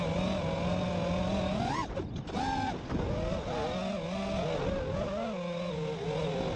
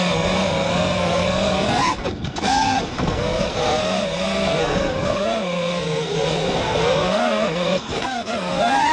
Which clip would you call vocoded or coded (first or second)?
second